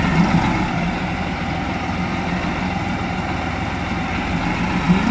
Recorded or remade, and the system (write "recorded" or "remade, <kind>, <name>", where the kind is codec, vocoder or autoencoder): recorded